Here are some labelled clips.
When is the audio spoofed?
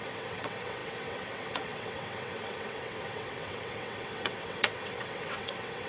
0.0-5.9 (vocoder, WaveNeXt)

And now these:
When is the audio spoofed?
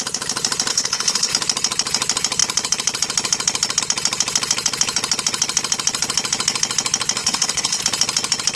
0.7-1.3 (codec, HILCodec); 7.2-7.8